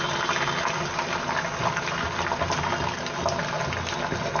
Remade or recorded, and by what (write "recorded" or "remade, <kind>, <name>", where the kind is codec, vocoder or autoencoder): recorded